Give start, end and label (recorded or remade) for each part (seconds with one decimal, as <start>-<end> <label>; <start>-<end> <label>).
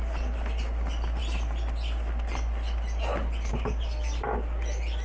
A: 0.0-5.0 recorded